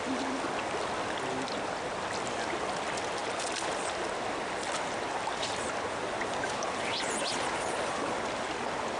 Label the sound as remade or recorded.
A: recorded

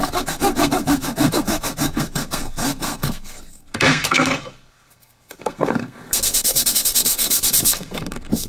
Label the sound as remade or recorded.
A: remade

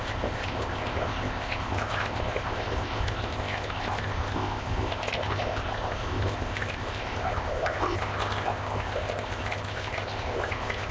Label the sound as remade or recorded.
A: remade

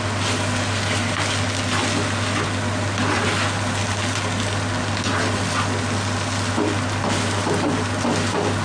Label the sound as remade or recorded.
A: recorded